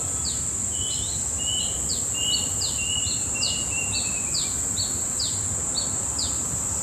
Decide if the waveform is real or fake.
real